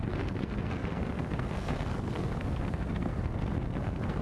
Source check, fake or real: fake